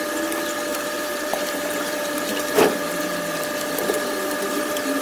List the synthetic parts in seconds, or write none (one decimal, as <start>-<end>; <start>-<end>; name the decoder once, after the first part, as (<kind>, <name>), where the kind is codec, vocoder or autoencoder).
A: 0.7-3.0 (vocoder, BigVGAN v2)